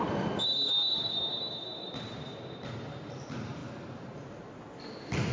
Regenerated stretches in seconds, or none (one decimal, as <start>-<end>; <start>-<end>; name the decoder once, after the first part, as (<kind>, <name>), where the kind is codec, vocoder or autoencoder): none